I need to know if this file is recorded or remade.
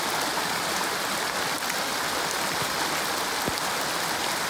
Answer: recorded